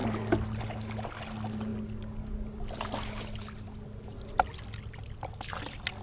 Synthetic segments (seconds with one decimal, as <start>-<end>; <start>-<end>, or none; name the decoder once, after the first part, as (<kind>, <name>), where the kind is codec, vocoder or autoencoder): none